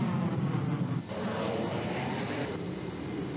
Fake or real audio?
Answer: real